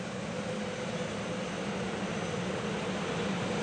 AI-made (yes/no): no